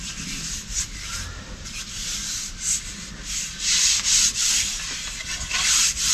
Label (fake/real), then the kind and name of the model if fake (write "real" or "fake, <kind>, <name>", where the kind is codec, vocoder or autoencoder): real